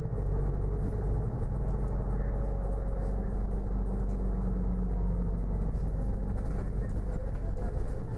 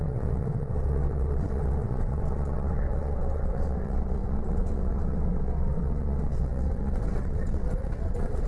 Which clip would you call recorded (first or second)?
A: first